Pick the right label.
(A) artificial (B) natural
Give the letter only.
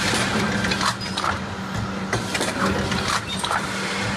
B